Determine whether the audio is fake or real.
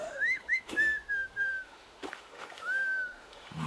fake